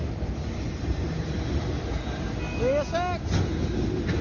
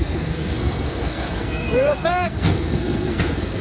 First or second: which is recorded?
first